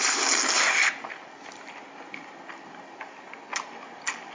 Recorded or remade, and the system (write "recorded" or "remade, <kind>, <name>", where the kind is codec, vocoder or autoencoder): recorded